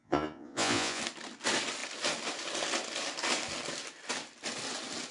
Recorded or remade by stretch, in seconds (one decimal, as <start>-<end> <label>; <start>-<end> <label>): 0.0-1.0 remade; 1.0-5.1 recorded